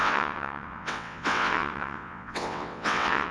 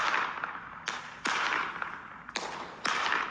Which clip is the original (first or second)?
second